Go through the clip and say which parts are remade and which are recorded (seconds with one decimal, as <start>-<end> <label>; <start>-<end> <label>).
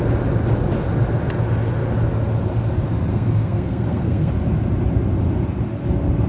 0.0-3.1 recorded; 3.1-4.3 remade; 4.3-6.3 recorded